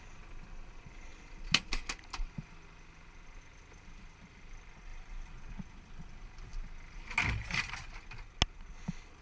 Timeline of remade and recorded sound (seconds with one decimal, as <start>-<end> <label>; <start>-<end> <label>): 0.0-9.2 recorded